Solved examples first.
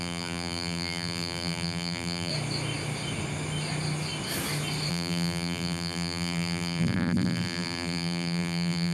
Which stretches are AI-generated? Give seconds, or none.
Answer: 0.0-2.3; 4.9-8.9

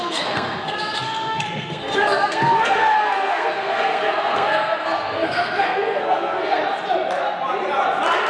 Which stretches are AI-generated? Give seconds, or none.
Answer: 0.0-6.6